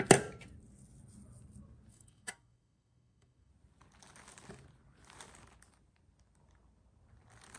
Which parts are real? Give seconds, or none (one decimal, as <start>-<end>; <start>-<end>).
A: 0.0-1.9; 3.5-7.6